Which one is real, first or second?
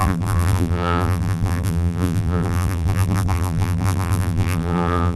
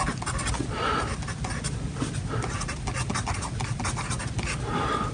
second